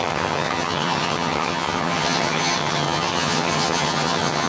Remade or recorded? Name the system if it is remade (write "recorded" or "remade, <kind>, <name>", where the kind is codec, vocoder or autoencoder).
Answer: remade, vocoder, HiFi-GAN